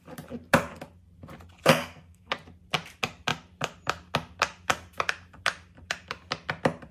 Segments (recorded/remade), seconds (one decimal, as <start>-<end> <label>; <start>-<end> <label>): 0.0-1.6 recorded; 1.6-2.3 remade; 2.3-6.9 recorded